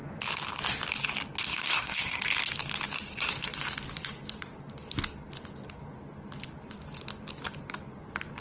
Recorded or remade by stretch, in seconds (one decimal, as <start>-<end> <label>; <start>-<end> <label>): 0.0-1.5 recorded; 1.5-2.2 remade; 2.2-8.4 recorded